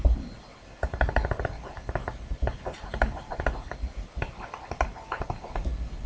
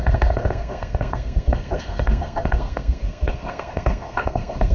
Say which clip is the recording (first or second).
first